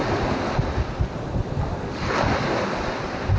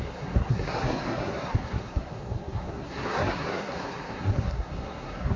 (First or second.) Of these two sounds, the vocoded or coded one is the second